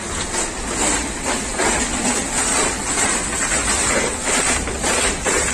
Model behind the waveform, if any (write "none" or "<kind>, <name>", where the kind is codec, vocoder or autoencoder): none